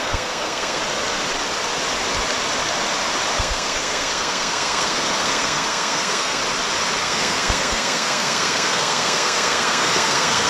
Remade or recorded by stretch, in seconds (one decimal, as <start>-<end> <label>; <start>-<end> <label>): 0.0-0.8 remade; 0.8-3.4 recorded; 3.4-6.4 remade; 6.4-7.0 recorded; 7.0-10.5 remade